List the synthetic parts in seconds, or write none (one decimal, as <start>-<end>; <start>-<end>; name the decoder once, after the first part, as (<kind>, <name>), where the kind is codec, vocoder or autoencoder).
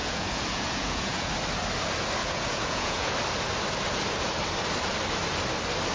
0.0-1.3 (vocoder, Vocos); 2.2-3.1